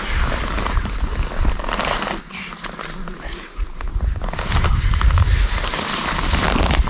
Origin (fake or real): real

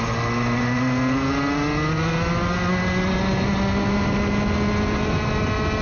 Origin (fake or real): real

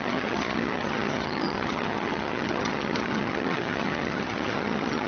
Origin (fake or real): fake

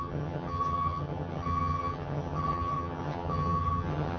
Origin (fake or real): fake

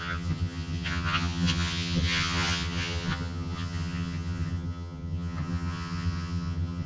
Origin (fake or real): fake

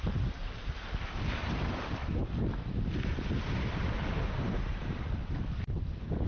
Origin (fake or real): real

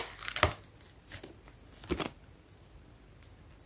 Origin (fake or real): real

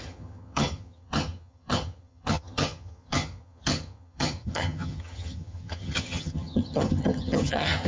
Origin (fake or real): fake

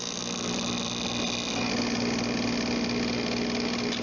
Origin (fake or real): real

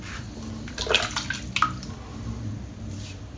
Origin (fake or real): real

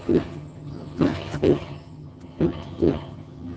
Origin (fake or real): fake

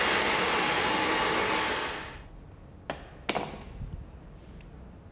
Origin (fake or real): real